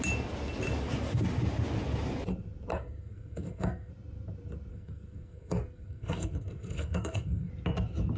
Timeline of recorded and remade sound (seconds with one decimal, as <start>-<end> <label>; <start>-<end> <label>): 0.0-2.7 recorded; 2.7-3.9 remade; 3.9-4.7 recorded; 4.7-7.5 remade; 7.5-8.2 recorded